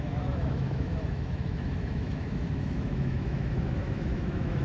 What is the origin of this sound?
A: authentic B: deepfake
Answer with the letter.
B